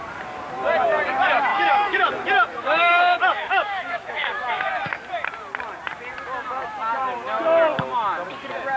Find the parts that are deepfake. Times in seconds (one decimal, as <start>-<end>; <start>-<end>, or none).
1.5-2.1; 2.6-4.7